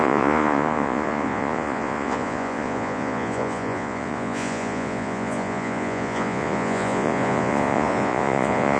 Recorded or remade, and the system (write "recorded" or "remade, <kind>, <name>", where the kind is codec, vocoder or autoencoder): remade, vocoder, Vocos